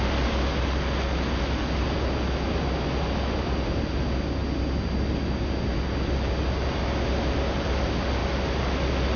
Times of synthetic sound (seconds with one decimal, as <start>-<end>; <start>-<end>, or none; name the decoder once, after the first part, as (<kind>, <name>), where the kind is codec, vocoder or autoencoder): none